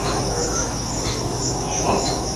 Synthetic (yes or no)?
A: yes